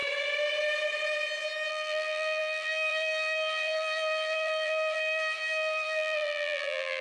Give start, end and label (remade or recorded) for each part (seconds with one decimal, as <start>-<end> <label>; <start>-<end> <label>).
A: 0.0-1.7 recorded; 1.7-7.0 remade